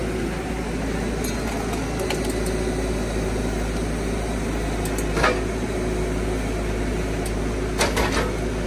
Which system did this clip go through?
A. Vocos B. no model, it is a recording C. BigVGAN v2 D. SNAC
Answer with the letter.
B